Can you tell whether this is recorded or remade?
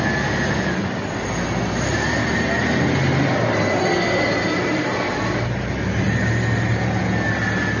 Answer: recorded